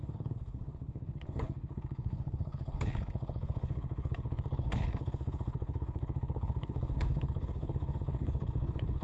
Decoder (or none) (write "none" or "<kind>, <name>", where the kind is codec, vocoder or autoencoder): codec, HILCodec